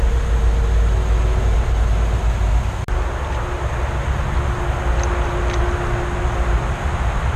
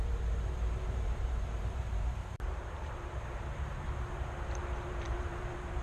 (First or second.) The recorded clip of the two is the first